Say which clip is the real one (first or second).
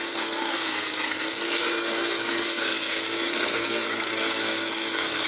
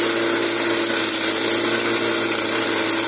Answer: second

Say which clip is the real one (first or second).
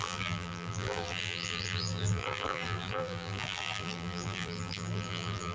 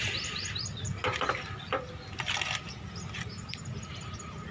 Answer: second